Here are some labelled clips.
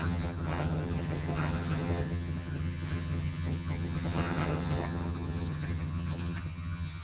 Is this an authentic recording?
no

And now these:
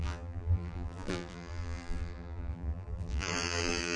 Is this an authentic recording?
no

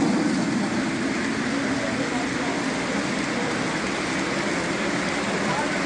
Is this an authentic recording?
yes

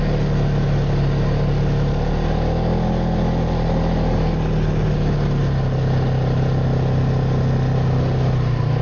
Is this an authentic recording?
yes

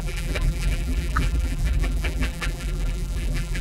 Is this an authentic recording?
no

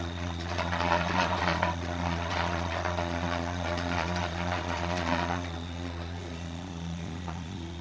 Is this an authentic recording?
no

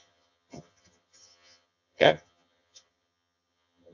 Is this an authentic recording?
no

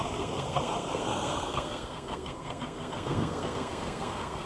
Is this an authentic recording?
no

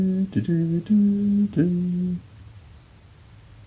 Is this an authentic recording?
yes